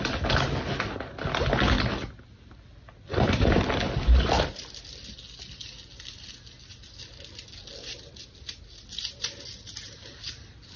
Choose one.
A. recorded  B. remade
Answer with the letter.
A